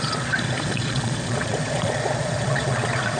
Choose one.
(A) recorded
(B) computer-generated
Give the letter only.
B